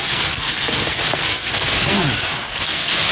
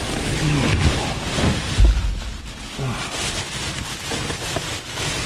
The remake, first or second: first